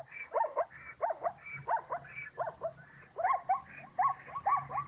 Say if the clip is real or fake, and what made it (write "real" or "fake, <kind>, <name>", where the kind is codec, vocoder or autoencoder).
real